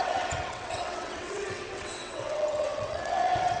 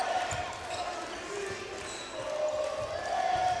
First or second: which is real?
second